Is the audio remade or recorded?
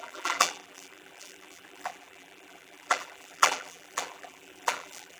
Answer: remade